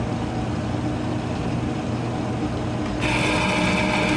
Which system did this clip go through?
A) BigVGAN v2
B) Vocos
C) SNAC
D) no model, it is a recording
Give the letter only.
D